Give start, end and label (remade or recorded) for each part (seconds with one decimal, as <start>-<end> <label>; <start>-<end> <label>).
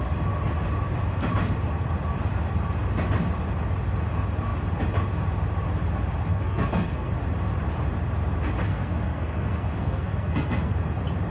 0.0-6.3 recorded; 6.3-7.1 remade; 7.1-8.7 recorded; 8.7-10.7 remade; 10.7-11.3 recorded